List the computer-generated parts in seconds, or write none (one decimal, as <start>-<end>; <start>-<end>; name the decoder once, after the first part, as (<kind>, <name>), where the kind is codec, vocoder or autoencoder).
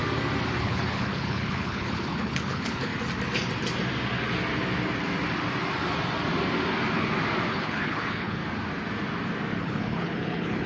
0.6-2.9 (codec, HILCodec); 7.5-8.4; 9.6-10.7